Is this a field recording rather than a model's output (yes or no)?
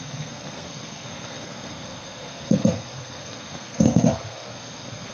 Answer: no